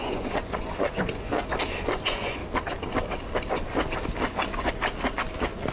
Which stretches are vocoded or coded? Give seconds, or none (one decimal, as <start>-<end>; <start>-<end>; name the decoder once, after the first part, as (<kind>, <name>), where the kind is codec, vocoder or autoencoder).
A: 0.0-1.3 (vocoder, Vocos); 1.9-2.4

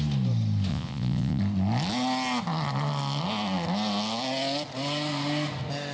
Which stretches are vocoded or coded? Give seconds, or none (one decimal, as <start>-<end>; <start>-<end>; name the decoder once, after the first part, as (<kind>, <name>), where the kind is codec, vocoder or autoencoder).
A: 0.7-1.4 (vocoder, Vocos)

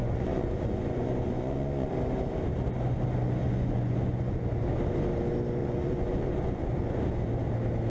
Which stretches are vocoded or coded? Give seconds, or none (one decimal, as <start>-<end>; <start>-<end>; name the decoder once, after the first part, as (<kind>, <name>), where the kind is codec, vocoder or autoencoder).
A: 0.0-1.9 (vocoder, Vocos); 3.4-4.4; 5.6-7.0

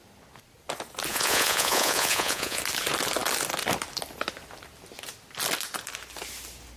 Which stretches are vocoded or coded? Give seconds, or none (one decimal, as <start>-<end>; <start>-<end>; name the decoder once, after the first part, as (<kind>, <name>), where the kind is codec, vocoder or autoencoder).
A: 1.1-2.6 (vocoder, Vocos)

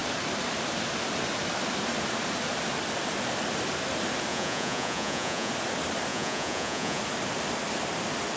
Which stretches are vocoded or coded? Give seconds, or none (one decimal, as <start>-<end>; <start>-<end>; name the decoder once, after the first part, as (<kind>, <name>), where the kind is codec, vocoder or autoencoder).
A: 4.3-5.5 (vocoder, Vocos); 6.1-7.0